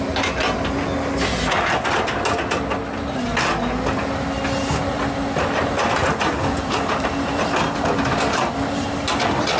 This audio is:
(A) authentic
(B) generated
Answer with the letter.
A